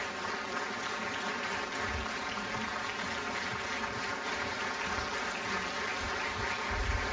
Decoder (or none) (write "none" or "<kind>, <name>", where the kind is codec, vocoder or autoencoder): none